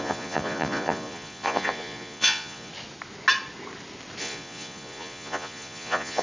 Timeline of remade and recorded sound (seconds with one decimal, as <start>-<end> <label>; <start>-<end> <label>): 0.0-2.7 remade; 2.7-4.2 recorded; 4.2-6.2 remade